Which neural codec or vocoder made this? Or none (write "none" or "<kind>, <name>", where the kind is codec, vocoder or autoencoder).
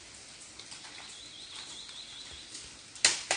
none